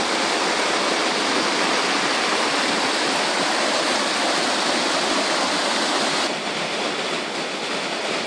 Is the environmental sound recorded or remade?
recorded